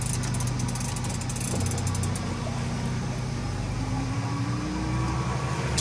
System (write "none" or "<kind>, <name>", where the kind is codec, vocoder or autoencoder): none